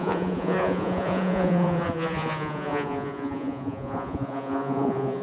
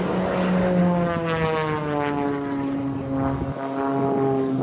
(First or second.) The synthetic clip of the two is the first